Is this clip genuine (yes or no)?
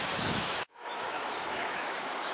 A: no